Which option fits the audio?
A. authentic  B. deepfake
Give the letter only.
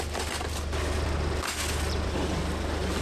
A